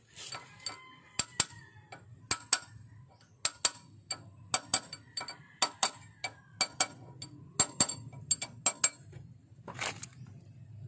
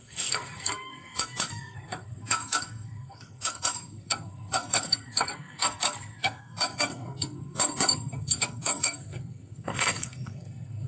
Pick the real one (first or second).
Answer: first